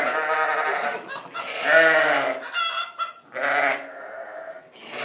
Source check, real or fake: real